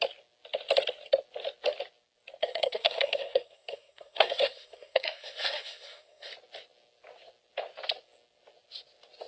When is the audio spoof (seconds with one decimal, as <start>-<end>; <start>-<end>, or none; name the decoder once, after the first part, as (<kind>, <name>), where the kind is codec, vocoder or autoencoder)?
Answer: 2.4-6.3 (codec, SNAC)